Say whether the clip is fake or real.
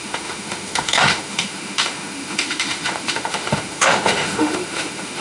fake